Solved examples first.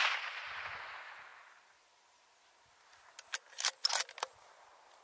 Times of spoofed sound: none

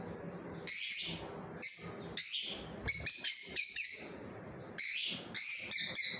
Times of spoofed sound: 3.4-4.5 (vocoder, Vocos)

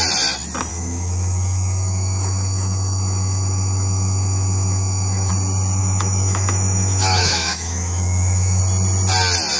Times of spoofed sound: 0.7-5.3 (autoencoder, DAC-VAE); 5.8-8.6

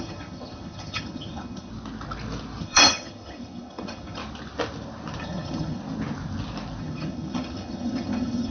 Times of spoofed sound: 0.0-1.7 (vocoder, HiFi-GAN); 2.6-4.2; 5.2-5.8; 6.8-8.5

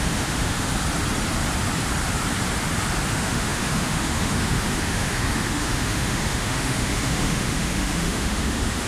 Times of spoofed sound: 0.0-0.7 (autoencoder, DAC-VAE); 3.1-8.9

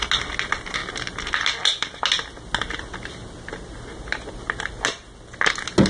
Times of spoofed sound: none

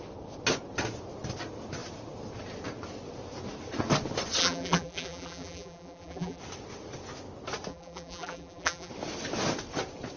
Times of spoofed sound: 4.4-6.4 (vocoder, BigVGAN v2); 7.7-8.9

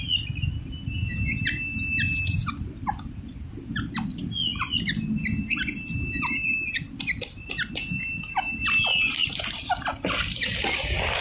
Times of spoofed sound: none